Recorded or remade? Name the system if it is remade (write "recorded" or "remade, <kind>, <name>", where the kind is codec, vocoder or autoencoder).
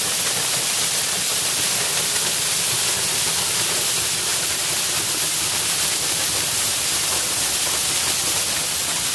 recorded